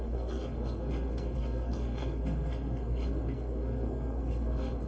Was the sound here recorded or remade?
remade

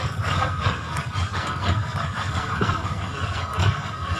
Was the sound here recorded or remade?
remade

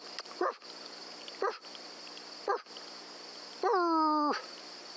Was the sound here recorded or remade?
recorded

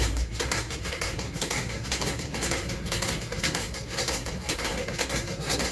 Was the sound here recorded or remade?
remade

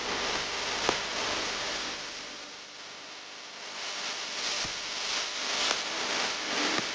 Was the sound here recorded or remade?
recorded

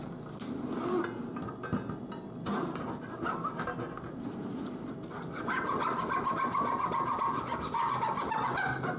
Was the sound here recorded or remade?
recorded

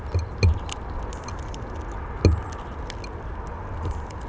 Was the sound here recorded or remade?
recorded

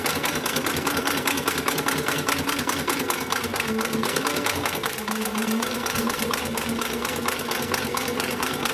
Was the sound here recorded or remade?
remade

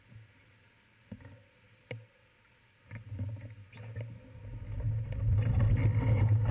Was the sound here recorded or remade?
recorded